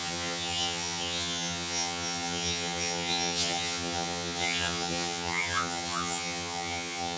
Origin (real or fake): fake